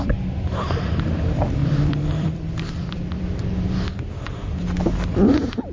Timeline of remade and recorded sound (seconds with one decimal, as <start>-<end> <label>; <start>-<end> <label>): 0.0-1.6 recorded; 1.6-4.6 remade; 4.6-5.7 recorded